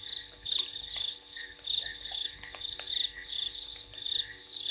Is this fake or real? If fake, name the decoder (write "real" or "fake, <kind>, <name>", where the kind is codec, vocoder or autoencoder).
real